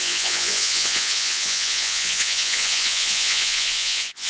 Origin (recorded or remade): remade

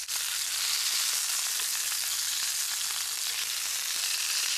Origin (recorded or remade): recorded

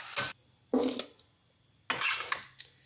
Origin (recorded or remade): recorded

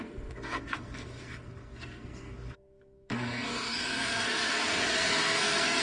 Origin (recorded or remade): remade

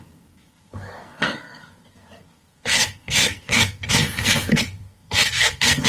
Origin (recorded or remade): remade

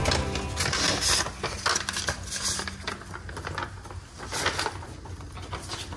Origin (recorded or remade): recorded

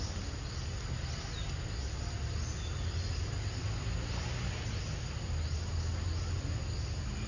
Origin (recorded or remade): recorded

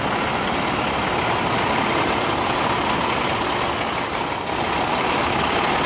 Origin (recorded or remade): recorded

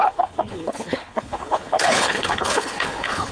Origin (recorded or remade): remade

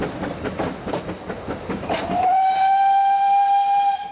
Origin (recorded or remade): recorded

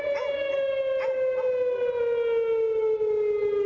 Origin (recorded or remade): recorded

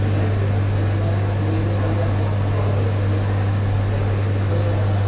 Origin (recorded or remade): recorded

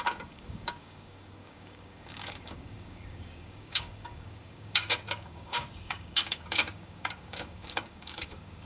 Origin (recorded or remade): remade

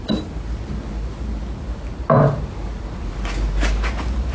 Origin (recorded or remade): recorded